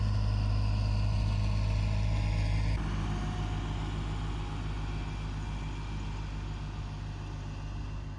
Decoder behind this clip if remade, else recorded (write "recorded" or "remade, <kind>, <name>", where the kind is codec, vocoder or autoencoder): recorded